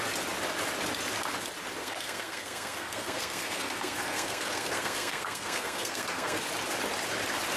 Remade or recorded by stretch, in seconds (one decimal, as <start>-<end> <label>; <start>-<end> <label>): 0.0-1.8 recorded; 1.8-6.4 remade; 6.4-7.6 recorded